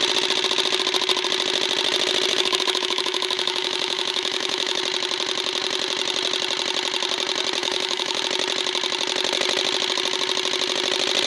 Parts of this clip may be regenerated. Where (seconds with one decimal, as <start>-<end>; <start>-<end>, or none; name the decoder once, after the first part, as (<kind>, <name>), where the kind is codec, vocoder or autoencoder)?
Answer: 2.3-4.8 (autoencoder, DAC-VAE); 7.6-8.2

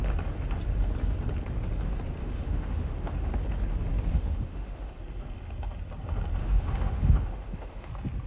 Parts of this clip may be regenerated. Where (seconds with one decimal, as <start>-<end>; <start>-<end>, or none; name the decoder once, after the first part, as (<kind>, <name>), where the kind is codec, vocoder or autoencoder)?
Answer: 2.2-3.3 (autoencoder, DAC-VAE); 4.1-4.9; 6.4-7.9

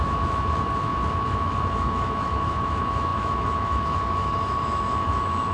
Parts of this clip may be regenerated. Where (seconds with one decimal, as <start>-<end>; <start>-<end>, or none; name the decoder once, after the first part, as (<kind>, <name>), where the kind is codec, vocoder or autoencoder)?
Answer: 0.0-5.5 (autoencoder, DAC-VAE)